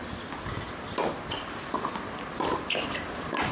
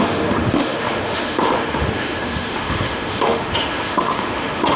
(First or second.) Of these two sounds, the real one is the first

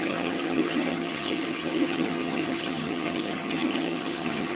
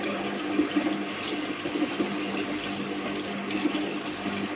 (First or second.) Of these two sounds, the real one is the second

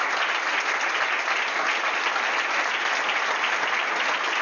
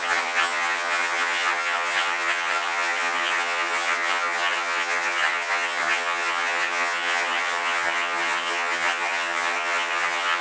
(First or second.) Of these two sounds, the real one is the first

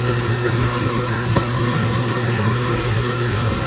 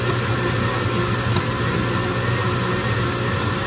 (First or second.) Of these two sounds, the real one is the second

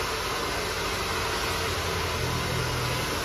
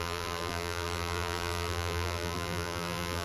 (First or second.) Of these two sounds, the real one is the first